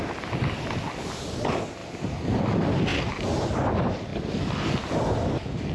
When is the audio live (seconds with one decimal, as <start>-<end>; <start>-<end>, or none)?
0.0-4.1; 5.0-5.7

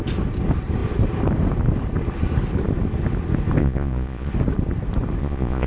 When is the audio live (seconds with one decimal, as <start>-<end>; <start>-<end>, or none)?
0.0-3.6; 4.3-5.2